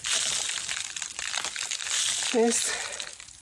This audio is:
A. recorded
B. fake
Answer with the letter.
A